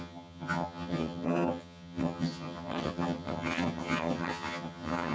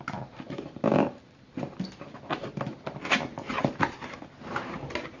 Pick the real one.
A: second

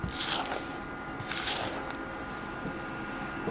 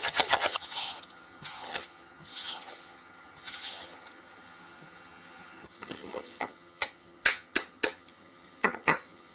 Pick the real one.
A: first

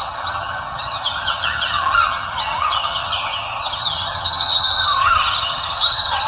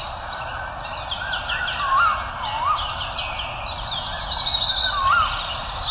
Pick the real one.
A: second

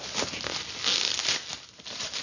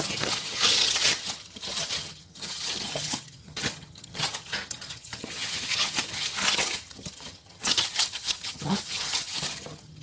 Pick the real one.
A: first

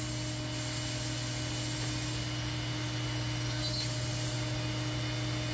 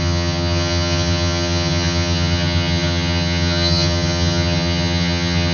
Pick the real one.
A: first